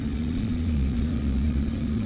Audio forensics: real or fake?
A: fake